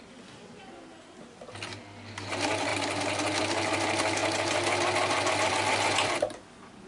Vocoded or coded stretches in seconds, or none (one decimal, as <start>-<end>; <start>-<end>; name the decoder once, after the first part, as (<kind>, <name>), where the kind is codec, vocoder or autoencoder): none